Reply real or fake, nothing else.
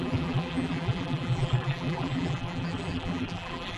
fake